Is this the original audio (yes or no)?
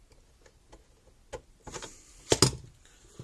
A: yes